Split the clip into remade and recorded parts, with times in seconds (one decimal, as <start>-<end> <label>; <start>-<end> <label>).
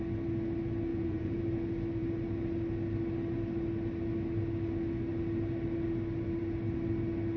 0.0-0.9 recorded; 0.9-1.4 remade; 1.4-7.4 recorded